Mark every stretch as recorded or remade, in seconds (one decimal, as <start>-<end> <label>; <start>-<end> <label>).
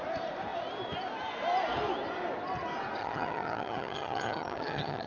0.0-3.0 recorded; 3.0-5.1 remade